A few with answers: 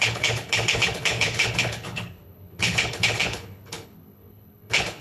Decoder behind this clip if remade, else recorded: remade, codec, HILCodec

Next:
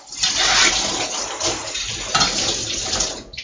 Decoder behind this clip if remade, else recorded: recorded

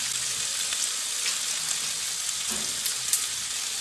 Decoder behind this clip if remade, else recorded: recorded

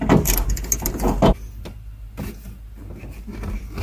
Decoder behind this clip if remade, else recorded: recorded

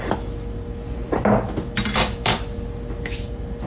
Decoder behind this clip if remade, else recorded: recorded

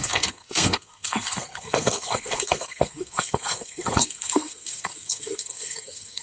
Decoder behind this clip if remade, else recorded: remade, codec, SNAC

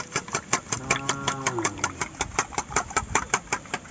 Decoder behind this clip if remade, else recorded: recorded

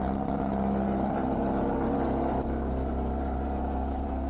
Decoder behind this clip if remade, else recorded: recorded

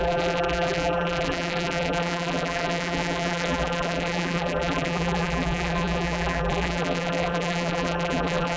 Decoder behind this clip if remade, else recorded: remade, vocoder, BigVGAN v2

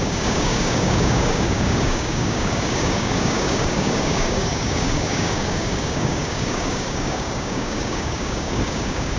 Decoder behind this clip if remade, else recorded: remade, codec, DAC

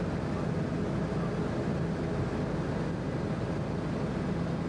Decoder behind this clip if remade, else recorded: recorded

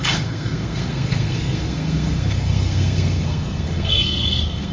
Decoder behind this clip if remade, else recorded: remade, codec, SNAC